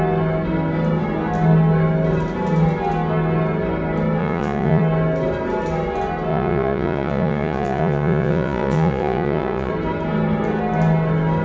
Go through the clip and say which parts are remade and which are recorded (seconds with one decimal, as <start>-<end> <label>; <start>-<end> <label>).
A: 0.0-4.2 recorded; 4.2-4.8 remade; 4.8-6.3 recorded; 6.3-9.7 remade; 9.7-11.4 recorded